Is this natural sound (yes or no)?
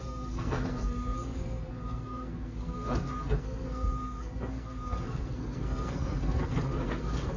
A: no